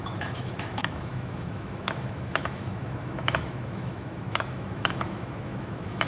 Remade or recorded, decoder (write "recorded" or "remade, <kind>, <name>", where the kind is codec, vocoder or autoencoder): remade, autoencoder, DAC-VAE